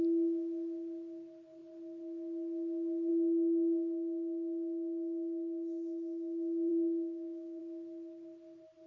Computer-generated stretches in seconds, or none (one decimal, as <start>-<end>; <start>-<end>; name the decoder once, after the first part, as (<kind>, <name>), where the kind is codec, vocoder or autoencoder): 6.7-7.6 (codec, DAC)